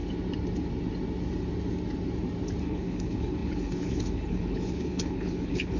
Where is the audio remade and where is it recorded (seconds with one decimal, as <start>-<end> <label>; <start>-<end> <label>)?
0.0-2.6 recorded; 2.6-5.8 remade